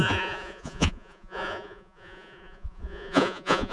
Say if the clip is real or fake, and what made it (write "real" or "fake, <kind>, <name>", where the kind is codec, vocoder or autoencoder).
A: fake, vocoder, Vocos